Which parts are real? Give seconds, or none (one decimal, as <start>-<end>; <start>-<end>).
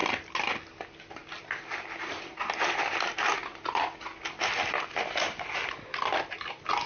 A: 0.0-6.9